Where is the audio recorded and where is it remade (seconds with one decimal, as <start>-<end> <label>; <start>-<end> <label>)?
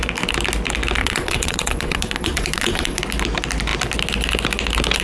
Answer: 0.0-1.0 recorded; 1.0-3.0 remade; 3.0-5.0 recorded